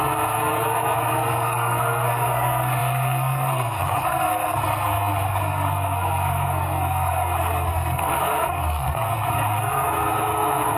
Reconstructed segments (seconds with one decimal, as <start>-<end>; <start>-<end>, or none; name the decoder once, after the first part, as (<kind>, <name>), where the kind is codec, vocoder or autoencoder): 0.0-10.8 (codec, SNAC)